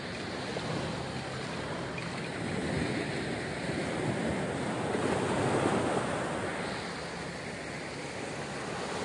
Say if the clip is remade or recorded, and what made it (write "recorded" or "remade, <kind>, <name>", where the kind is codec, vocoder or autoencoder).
recorded